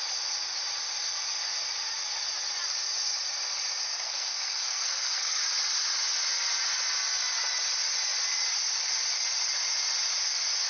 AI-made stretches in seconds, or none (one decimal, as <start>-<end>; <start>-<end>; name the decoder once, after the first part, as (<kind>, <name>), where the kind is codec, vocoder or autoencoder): 3.9-5.4 (codec, SNAC)